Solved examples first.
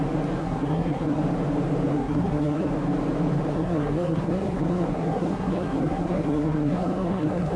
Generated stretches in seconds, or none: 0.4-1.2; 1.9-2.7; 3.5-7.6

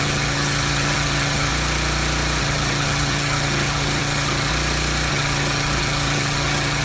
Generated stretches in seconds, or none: 0.0-1.5; 2.4-4.5; 5.1-6.8